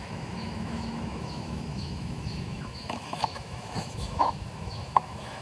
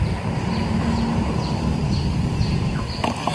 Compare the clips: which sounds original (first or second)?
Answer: second